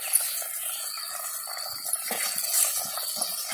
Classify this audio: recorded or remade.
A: recorded